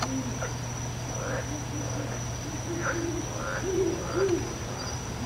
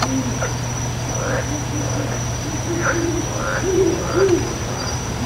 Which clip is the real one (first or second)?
first